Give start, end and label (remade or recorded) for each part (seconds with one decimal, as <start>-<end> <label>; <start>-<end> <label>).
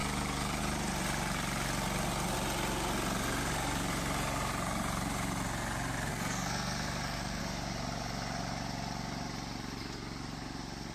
0.0-6.1 recorded; 6.1-7.4 remade; 7.4-10.9 recorded